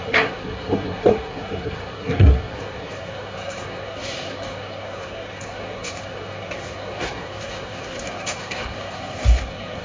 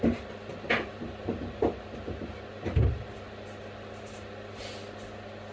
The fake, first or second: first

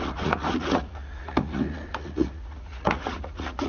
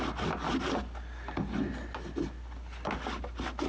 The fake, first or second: first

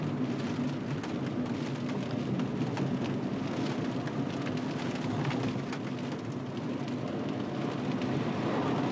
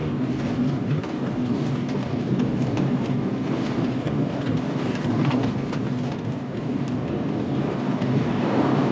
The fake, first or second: second